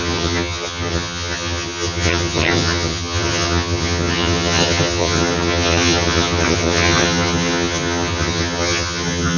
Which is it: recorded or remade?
remade